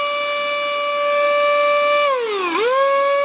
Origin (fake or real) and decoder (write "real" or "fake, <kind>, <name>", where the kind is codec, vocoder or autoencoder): real